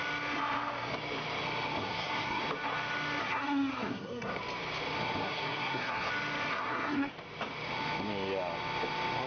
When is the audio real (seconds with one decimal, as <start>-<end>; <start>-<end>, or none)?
0.0-1.8; 2.4-3.2; 4.4-5.2; 6.1-6.5; 7.1-9.3